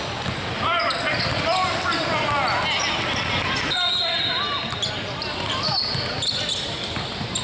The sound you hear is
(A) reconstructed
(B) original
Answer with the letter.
B